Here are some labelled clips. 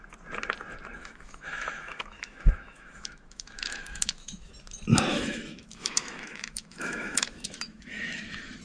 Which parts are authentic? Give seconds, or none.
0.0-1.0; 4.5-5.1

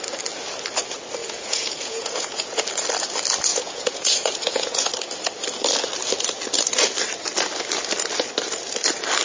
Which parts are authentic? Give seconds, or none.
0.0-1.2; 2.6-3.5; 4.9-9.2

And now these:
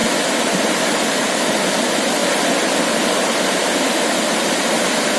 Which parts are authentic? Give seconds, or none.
0.0-5.2

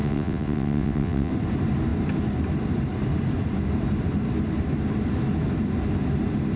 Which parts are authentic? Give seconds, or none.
1.3-6.6